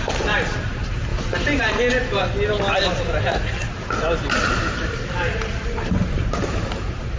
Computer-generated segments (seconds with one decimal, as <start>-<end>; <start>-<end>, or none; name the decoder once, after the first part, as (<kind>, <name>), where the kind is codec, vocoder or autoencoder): 0.0-1.1 (vocoder, BigVGAN v2); 1.6-2.2; 4.4-7.2